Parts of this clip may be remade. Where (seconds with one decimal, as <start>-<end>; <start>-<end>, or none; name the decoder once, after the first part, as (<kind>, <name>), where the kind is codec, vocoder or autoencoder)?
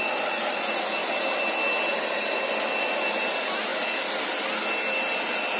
none